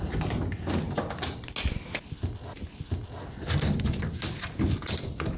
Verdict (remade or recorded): recorded